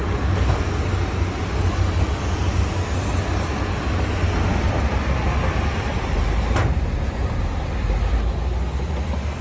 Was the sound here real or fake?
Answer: real